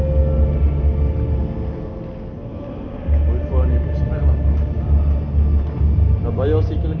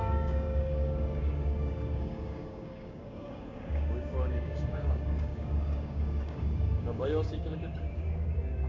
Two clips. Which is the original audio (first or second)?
first